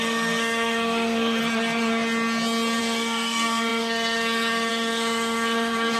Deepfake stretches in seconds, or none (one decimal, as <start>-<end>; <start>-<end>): 0.0-1.4; 2.8-6.0